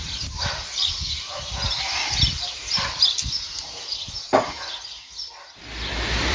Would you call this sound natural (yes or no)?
no